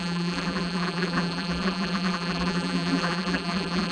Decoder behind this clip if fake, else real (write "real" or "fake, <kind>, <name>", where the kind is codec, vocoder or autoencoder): fake, vocoder, BigVGAN v2